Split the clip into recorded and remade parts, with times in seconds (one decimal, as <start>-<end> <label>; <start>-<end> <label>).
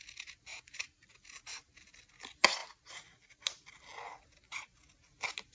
0.0-0.5 recorded; 0.5-1.1 remade; 1.1-5.5 recorded